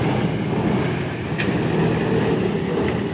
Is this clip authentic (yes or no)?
yes